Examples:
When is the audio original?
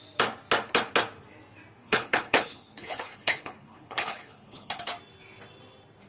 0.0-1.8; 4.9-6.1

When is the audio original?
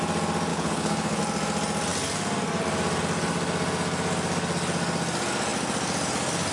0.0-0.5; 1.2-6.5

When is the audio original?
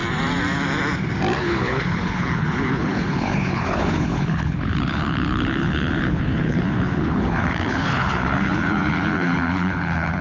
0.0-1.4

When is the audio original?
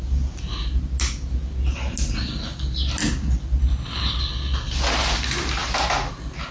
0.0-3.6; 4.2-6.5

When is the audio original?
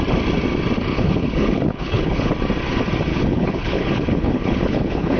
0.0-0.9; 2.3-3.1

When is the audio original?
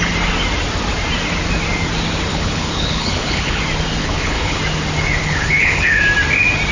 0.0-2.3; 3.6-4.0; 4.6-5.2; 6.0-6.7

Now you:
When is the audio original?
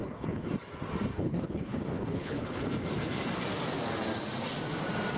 0.5-1.1; 2.6-5.2